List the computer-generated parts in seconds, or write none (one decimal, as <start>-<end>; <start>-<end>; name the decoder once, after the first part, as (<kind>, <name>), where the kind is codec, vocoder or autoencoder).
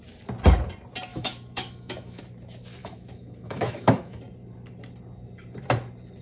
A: 1.1-2.2 (autoencoder, DAC-VAE); 2.8-4.2